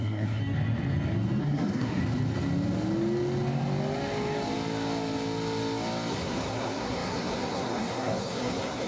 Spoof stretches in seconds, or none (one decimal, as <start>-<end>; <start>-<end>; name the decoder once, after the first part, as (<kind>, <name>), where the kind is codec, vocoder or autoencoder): 0.0-0.4 (codec, SNAC); 1.4-2.0; 6.1-8.9